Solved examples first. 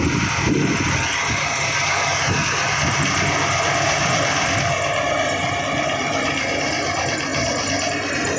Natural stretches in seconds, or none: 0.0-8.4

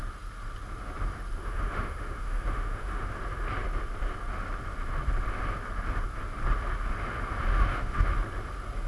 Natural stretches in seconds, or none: 0.0-1.4; 3.1-7.5; 8.1-8.9